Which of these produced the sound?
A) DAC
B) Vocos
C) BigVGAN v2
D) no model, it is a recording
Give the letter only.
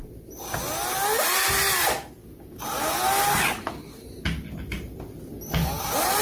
D